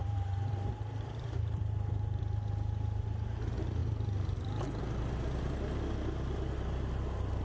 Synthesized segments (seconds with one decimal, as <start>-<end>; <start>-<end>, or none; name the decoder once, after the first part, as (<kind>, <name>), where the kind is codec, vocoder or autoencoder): 0.0-2.2 (vocoder, BigVGAN v2)